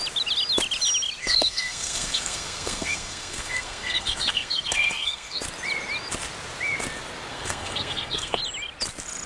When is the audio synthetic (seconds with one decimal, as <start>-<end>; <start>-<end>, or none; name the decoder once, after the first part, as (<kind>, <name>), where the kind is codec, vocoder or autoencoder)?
1.2-5.4 (codec, SNAC); 7.3-8.4